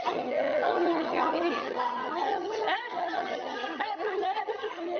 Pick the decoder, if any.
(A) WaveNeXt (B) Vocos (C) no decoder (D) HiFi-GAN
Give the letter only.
D